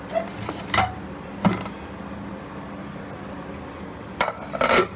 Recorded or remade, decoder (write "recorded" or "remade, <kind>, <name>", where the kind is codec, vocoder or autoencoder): recorded